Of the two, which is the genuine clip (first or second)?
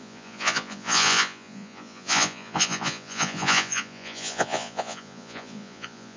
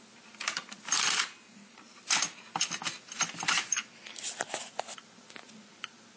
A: second